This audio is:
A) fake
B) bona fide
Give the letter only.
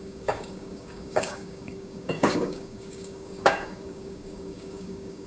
A